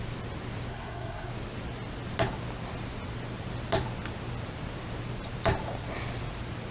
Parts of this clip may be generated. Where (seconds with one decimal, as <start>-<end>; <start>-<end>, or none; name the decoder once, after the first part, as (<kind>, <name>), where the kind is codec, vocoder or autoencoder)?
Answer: 0.7-1.3 (codec, SNAC)